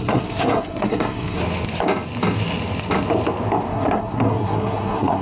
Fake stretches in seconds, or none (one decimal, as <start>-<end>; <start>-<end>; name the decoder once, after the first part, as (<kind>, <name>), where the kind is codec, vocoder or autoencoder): 0.0-1.4 (codec, SNAC); 3.7-5.2